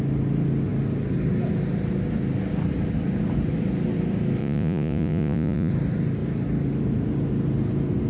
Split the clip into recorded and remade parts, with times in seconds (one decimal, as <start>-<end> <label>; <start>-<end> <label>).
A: 0.0-4.4 recorded; 4.4-5.7 remade; 5.7-8.1 recorded